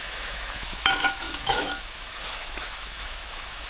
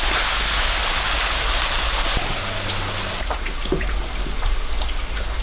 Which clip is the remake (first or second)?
first